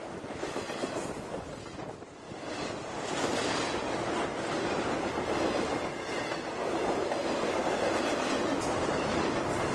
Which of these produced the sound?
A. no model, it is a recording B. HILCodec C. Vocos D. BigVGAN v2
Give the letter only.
A